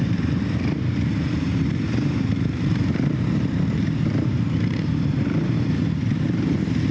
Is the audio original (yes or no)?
no